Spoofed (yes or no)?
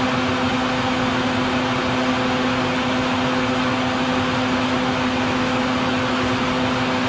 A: no